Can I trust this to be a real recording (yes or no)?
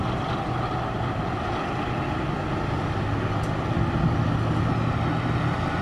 yes